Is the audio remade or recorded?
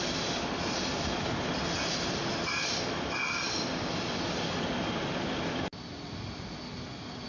recorded